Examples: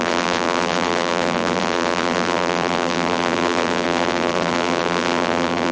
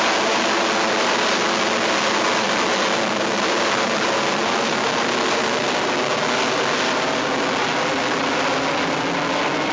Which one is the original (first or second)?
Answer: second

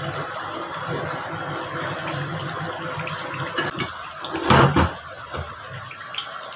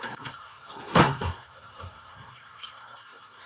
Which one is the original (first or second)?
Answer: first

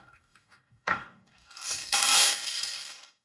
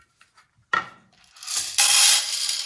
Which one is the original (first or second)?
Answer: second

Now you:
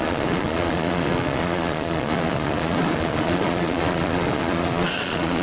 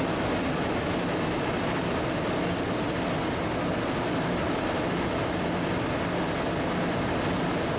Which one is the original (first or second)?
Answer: second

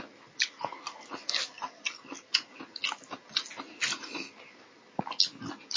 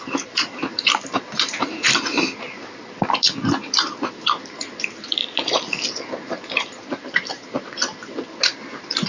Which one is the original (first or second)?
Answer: first